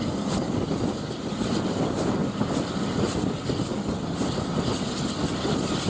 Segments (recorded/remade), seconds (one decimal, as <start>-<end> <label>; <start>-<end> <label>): 0.0-5.9 recorded